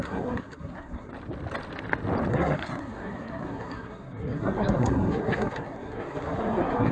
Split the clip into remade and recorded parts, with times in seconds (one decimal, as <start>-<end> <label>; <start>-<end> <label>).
0.0-1.1 remade; 1.1-2.3 recorded; 2.3-6.9 remade